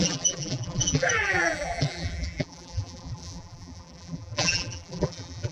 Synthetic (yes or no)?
yes